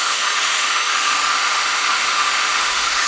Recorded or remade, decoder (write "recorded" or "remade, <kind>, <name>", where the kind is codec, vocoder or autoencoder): remade, autoencoder, DAC-VAE